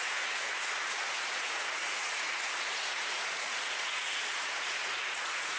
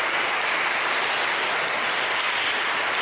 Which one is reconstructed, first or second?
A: first